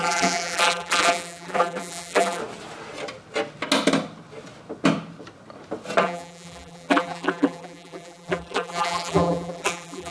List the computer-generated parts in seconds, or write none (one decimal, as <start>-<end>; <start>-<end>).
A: 0.0-2.4; 6.0-10.1